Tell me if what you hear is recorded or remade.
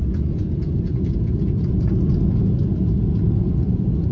remade